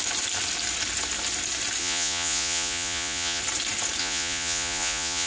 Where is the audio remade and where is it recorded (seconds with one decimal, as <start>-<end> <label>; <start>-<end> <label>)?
0.0-1.8 recorded; 1.8-3.4 remade; 3.4-4.0 recorded; 4.0-5.3 remade

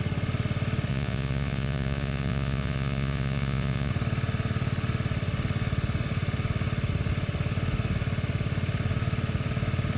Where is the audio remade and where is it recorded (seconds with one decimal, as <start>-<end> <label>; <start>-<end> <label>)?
0.0-0.9 recorded; 0.9-3.9 remade; 3.9-10.0 recorded

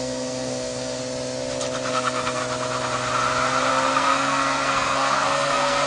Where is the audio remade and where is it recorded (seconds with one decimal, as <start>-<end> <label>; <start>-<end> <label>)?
0.0-1.0 remade; 1.0-1.9 recorded; 1.9-2.4 remade; 2.4-3.7 recorded; 3.7-5.9 remade

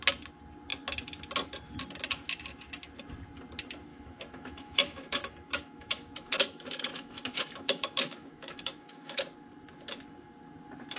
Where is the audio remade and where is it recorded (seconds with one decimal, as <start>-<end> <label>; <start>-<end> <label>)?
0.0-3.9 recorded; 3.9-9.2 remade; 9.2-11.0 recorded

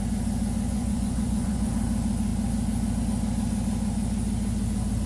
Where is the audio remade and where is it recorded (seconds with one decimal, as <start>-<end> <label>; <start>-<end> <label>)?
0.0-0.7 recorded; 0.7-1.7 remade; 1.7-5.1 recorded

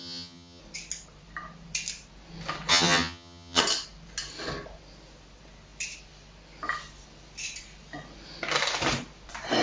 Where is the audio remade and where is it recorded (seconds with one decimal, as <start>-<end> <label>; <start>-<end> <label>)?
0.0-0.6 remade; 0.6-2.7 recorded; 2.7-3.6 remade; 3.6-9.6 recorded

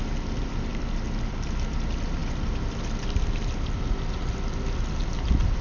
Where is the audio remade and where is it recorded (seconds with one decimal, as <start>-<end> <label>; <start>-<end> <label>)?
0.0-0.7 recorded; 0.7-1.5 remade; 1.5-5.6 recorded

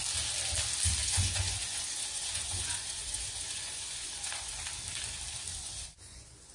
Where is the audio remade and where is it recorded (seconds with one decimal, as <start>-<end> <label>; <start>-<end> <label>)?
0.0-1.0 recorded; 1.0-4.6 remade; 4.6-5.5 recorded; 5.5-6.5 remade